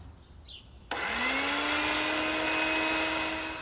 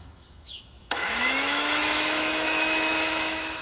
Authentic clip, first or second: first